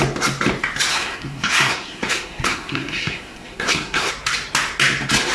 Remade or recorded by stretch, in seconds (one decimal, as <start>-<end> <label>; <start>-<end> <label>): 0.0-0.9 recorded; 0.9-4.1 remade; 4.1-5.3 recorded